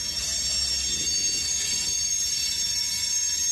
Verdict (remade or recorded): recorded